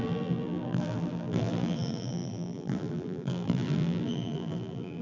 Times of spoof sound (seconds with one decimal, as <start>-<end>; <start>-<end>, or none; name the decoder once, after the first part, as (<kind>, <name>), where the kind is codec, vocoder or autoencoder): 0.0-5.0 (vocoder, BigVGAN v2)